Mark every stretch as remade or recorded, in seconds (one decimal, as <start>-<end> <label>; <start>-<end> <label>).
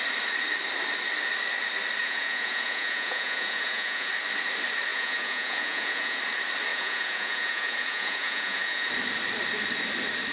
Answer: 0.0-2.0 recorded; 2.0-4.1 remade; 4.1-4.9 recorded; 4.9-6.2 remade; 6.2-6.7 recorded; 6.7-8.9 remade; 8.9-10.3 recorded